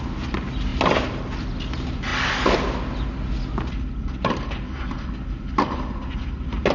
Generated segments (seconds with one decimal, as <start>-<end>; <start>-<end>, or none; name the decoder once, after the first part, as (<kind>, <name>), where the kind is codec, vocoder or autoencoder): none